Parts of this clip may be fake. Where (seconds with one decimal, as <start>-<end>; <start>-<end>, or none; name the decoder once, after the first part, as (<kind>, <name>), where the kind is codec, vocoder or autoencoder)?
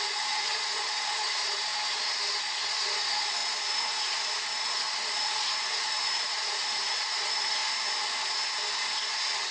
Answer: 0.0-1.7 (vocoder, Vocos); 2.4-7.6